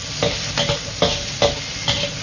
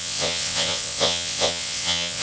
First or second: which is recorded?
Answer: first